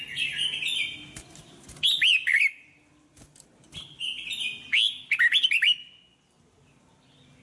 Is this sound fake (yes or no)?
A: no